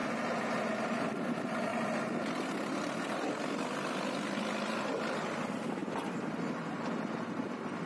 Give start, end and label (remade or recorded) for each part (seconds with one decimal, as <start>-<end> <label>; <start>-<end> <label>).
0.0-0.8 recorded; 0.8-1.7 remade; 1.7-2.8 recorded; 2.8-5.8 remade; 5.8-6.3 recorded; 6.3-7.9 remade